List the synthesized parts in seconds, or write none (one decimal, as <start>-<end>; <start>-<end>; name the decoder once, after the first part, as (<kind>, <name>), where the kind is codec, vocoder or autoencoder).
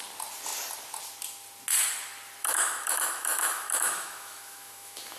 2.4-5.2 (autoencoder, DAC-VAE)